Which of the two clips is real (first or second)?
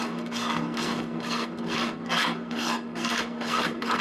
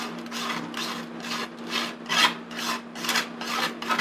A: second